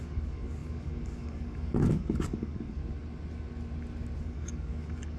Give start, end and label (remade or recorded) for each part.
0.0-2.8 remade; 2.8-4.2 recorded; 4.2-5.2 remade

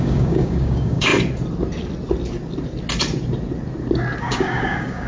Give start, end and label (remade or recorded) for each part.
0.0-1.1 remade; 1.1-4.2 recorded; 4.2-5.1 remade

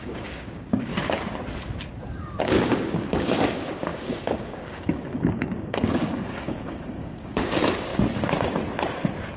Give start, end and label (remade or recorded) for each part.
0.0-0.9 remade; 0.9-2.4 recorded; 2.4-7.9 remade; 7.9-9.4 recorded

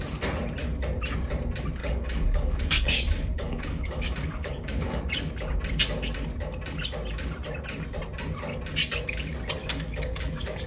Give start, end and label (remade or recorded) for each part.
0.0-1.8 recorded; 1.8-5.0 remade; 5.0-9.6 recorded; 9.6-10.7 remade